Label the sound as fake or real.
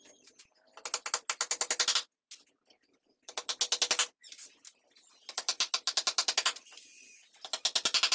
real